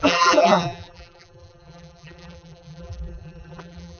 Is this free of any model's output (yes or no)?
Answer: no